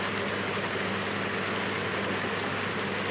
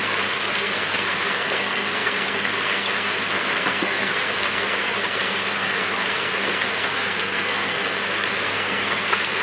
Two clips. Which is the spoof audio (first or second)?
second